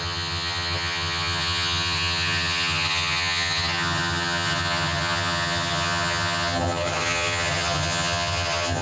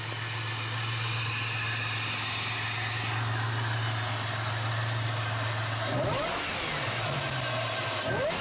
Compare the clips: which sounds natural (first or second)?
second